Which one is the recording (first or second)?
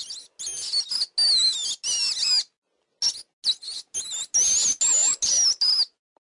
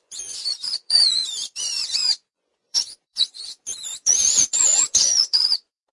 first